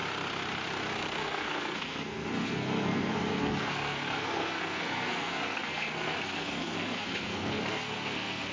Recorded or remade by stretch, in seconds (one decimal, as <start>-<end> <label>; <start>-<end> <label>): 0.0-1.0 recorded; 1.0-8.5 remade